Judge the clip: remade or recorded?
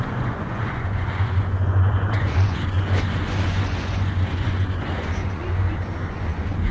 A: remade